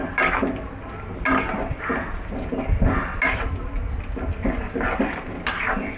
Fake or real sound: real